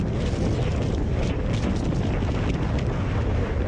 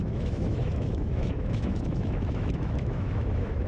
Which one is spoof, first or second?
second